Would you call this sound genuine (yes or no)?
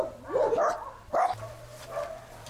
yes